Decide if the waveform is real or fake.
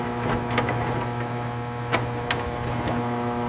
real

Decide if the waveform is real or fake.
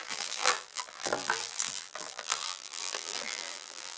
fake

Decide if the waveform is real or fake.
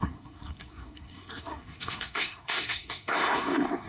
fake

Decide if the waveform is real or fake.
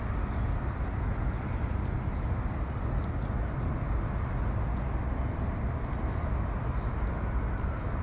real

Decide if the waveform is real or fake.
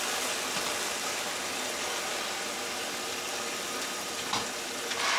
real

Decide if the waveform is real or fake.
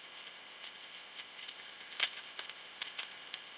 fake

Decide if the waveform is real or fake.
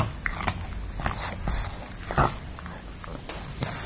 real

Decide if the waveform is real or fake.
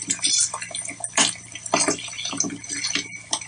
real